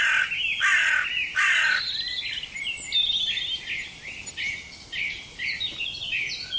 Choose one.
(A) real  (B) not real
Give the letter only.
A